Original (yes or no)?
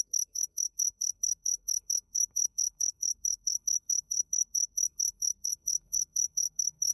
no